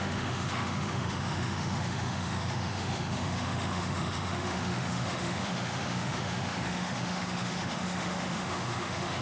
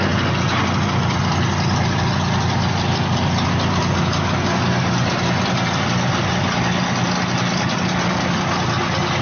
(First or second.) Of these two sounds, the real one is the second